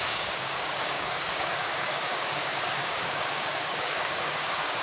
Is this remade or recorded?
remade